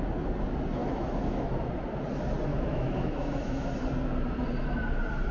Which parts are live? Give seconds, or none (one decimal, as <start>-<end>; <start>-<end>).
0.0-0.8; 1.6-2.5; 3.7-5.3